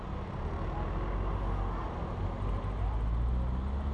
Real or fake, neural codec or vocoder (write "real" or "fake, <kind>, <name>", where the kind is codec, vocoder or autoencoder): real